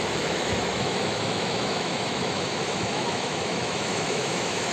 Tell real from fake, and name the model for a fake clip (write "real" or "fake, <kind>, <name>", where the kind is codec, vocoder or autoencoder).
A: fake, autoencoder, DAC-VAE